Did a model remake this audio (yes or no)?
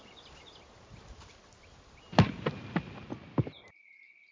no